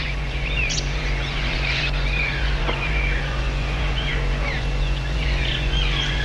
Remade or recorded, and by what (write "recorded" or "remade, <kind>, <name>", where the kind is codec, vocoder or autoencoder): remade, vocoder, Vocos